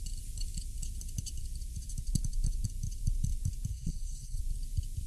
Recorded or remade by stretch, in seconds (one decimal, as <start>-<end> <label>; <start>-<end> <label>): 0.0-3.7 recorded; 3.7-4.4 remade; 4.4-5.1 recorded